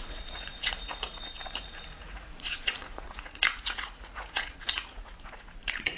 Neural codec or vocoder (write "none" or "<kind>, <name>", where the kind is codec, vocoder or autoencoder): vocoder, Vocos